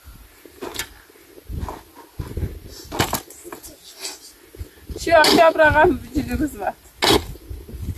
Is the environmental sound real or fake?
real